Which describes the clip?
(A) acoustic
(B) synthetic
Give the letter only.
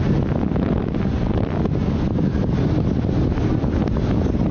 A